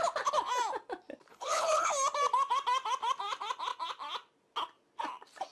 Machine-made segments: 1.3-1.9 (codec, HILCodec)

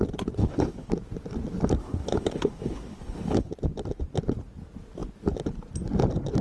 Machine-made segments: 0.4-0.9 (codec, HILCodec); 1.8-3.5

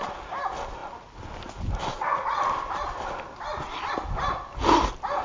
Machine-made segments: none